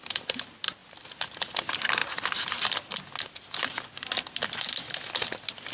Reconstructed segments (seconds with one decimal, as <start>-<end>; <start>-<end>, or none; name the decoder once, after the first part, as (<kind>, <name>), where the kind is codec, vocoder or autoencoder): none